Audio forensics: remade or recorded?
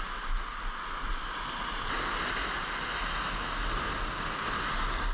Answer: recorded